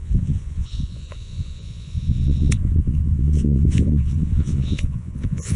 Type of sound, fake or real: fake